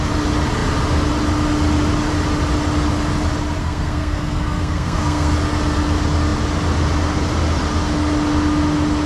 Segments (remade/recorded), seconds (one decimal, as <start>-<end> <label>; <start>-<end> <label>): 0.0-3.6 recorded; 3.6-5.3 remade; 5.3-9.1 recorded